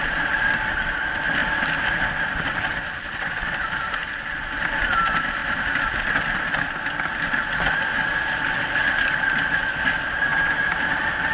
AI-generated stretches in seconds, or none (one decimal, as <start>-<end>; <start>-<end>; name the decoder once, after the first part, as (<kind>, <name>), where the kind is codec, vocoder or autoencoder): none